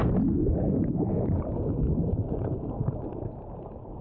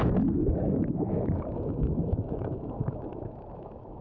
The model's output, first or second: second